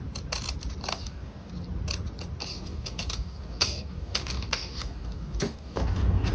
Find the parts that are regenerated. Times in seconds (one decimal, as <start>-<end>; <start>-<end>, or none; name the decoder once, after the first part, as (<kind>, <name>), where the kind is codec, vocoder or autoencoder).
0.9-1.5 (codec, DAC); 2.5-6.3